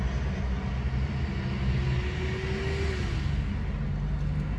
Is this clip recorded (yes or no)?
yes